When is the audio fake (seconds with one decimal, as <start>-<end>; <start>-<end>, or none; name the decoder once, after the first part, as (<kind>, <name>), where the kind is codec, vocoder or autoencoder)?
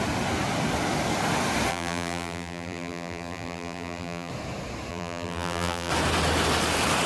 1.7-4.3 (vocoder, BigVGAN v2); 4.9-5.9